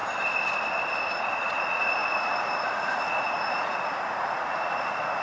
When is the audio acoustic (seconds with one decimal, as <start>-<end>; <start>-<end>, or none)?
0.0-1.1